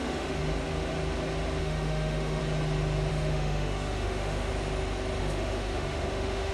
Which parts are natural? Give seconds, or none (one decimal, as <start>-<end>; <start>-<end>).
0.4-1.6; 2.4-3.1; 4.5-5.2